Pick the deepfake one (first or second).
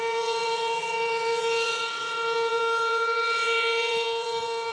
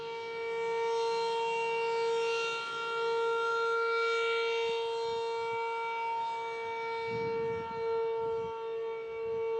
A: first